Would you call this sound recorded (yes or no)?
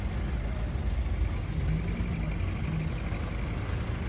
yes